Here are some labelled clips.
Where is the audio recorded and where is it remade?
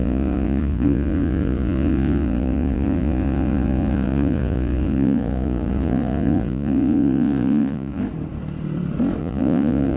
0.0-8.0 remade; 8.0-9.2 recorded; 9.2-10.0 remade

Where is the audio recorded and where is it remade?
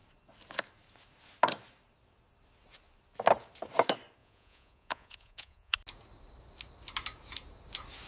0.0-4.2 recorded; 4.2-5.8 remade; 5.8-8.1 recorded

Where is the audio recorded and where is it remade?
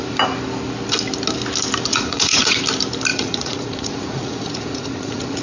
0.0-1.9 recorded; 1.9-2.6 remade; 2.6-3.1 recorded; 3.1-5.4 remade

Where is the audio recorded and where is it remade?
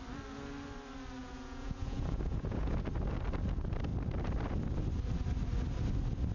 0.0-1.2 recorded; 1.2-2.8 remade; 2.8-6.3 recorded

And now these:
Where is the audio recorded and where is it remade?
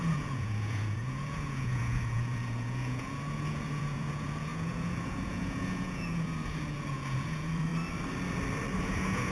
0.0-7.7 remade; 7.7-8.8 recorded; 8.8-9.3 remade